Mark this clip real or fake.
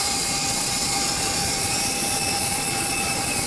fake